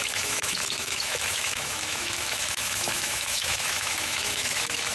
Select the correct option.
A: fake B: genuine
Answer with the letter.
A